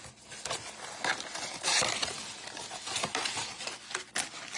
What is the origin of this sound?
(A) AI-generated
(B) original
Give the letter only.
B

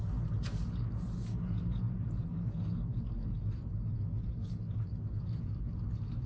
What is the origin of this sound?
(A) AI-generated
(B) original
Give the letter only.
A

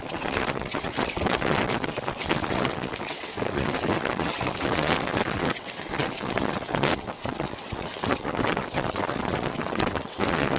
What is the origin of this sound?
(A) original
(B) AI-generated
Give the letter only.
B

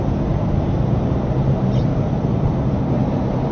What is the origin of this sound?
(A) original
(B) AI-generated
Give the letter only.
B